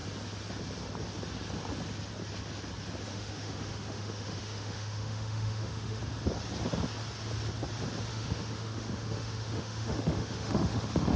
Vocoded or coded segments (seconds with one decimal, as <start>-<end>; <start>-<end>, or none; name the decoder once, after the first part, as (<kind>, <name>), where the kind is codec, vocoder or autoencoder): 3.1-6.0 (autoencoder, DAC-VAE); 8.1-11.2